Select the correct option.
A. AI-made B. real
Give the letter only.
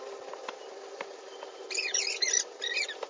B